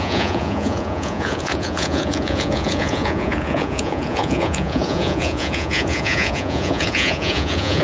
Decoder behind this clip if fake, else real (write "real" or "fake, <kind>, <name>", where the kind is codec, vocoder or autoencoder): fake, vocoder, Vocos